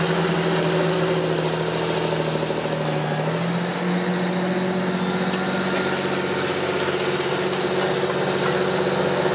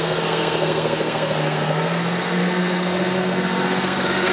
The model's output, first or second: second